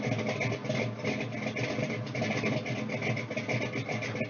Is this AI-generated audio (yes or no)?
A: no